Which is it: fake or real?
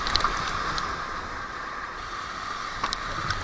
real